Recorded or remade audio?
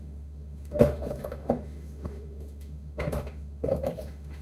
remade